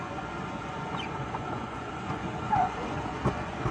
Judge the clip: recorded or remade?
remade